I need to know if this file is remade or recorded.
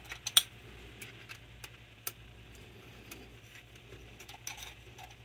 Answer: recorded